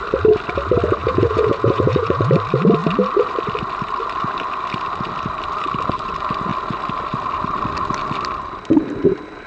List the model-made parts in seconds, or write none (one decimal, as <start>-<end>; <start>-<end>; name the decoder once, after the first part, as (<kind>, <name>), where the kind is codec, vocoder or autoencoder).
1.0-2.3 (vocoder, Vocos)